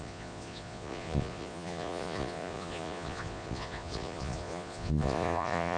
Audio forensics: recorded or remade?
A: remade